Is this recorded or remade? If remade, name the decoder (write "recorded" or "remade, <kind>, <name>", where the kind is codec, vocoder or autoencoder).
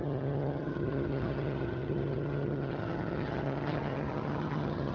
remade, vocoder, HiFi-GAN